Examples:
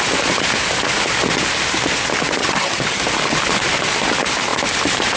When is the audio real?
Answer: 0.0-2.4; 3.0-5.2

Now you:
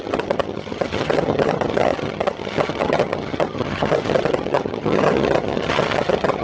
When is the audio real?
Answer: none